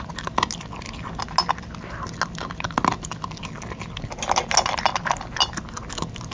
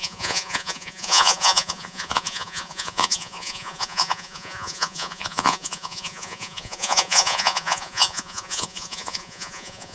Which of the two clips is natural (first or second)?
first